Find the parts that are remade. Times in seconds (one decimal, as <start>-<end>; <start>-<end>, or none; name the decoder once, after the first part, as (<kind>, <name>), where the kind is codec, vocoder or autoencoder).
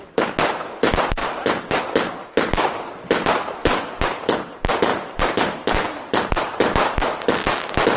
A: 1.2-1.8 (vocoder, BigVGAN v2); 4.9-6.3